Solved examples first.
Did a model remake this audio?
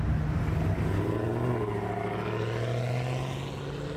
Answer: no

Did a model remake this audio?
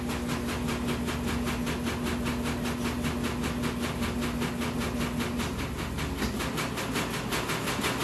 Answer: no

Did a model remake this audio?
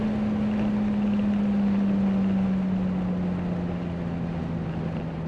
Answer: no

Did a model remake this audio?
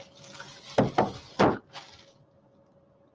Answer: no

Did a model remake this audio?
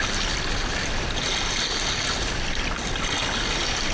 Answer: no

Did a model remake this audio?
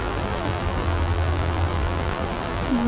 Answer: yes